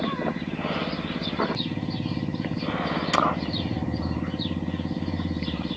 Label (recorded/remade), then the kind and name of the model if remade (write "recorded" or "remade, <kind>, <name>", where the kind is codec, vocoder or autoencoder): recorded